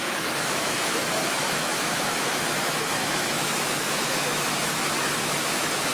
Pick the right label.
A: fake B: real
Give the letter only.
A